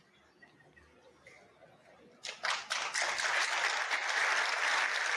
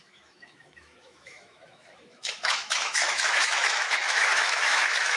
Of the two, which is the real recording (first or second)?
first